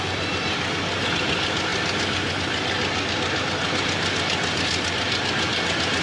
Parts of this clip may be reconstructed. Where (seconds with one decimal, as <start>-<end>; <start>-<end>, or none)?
none